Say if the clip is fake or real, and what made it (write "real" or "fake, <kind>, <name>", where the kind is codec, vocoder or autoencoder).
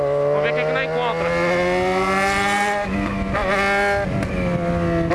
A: real